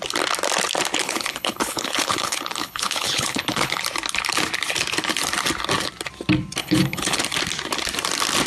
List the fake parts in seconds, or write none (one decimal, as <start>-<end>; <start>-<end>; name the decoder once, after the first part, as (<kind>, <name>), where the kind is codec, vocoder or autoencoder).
1.0-3.8 (codec, HILCodec); 6.6-7.2